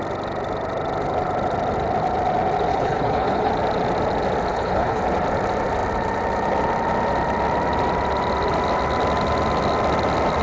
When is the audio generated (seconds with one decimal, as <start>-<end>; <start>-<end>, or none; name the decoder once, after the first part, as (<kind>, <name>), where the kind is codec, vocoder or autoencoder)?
2.7-3.5 (codec, HILCodec); 4.5-5.0